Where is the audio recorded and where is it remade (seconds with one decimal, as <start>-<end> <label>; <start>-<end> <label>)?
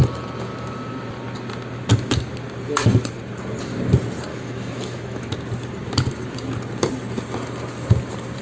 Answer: 0.0-4.3 recorded; 4.3-5.3 remade; 5.3-8.4 recorded